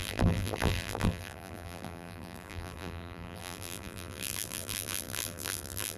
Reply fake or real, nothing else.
fake